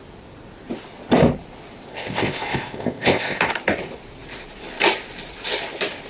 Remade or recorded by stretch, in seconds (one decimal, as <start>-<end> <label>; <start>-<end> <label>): 0.0-1.9 recorded; 1.9-3.5 remade; 3.5-6.1 recorded